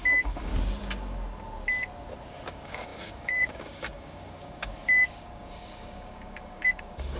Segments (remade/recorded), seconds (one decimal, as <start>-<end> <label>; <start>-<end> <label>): 0.0-0.5 remade; 0.5-2.3 recorded; 2.3-7.2 remade